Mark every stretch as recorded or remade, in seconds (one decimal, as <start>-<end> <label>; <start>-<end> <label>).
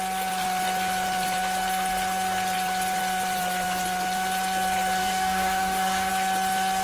0.0-5.0 recorded; 5.0-6.1 remade; 6.1-6.8 recorded